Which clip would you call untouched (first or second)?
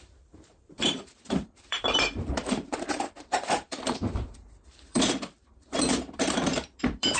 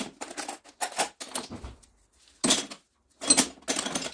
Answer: second